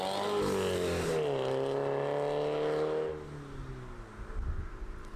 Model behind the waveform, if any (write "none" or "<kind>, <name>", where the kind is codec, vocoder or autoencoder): none